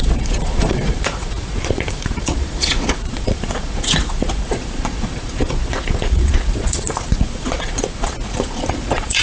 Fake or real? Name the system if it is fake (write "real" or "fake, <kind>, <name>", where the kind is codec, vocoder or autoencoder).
fake, vocoder, Vocos